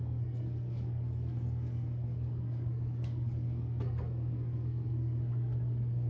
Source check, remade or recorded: remade